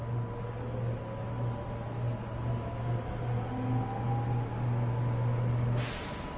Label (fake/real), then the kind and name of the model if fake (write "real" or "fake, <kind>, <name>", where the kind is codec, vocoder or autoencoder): real